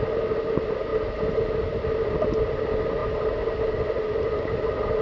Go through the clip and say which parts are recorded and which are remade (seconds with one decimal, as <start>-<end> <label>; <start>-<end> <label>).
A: 0.0-5.0 recorded